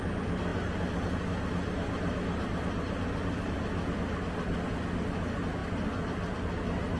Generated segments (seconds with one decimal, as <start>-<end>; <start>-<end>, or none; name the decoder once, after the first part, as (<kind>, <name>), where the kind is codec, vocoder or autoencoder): none